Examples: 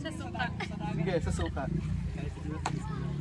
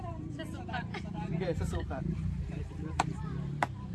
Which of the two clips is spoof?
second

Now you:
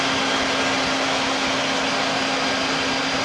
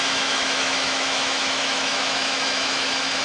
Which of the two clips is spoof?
second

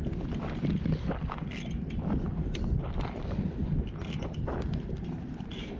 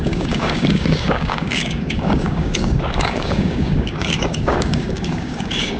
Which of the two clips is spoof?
second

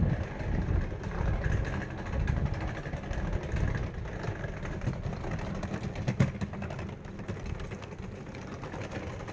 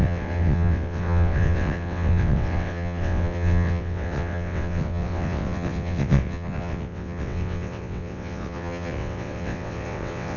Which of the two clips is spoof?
second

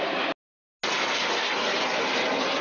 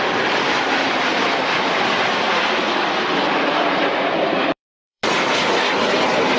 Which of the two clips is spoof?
second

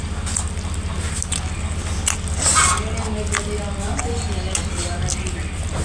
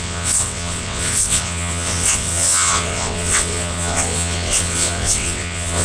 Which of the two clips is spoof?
second